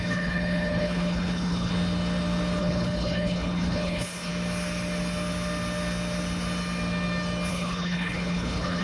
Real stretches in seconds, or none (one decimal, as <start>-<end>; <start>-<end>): 1.7-2.6; 4.3-7.5